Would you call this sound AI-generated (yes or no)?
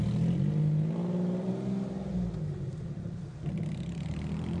no